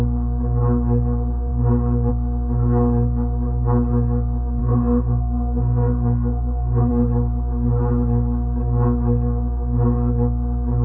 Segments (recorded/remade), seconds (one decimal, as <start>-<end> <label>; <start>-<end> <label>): 0.0-4.6 recorded; 4.6-6.9 remade; 6.9-10.8 recorded

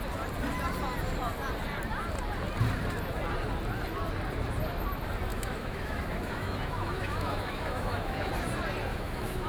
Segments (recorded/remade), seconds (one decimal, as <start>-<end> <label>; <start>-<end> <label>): 0.0-5.3 recorded; 5.3-8.3 remade; 8.3-8.9 recorded; 8.9-9.5 remade

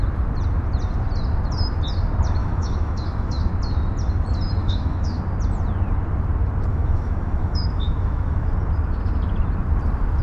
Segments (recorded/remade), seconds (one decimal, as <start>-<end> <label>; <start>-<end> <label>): 0.0-2.4 recorded; 2.4-3.5 remade; 3.5-4.6 recorded; 4.6-5.2 remade; 5.2-6.7 recorded; 6.7-8.5 remade; 8.5-10.2 recorded